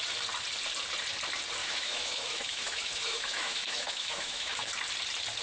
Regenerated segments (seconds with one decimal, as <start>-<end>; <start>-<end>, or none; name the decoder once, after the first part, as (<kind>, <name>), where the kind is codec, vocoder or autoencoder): 1.6-4.7 (autoencoder, DAC-VAE)